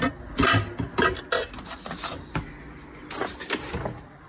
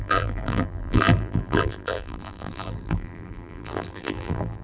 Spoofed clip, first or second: second